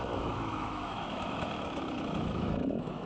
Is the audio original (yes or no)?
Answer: no